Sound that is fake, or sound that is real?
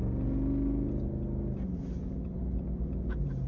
real